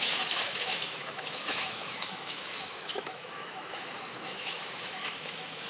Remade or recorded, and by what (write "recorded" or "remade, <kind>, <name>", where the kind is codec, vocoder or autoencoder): remade, autoencoder, DAC-VAE